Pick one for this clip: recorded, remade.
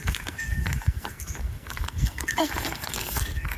remade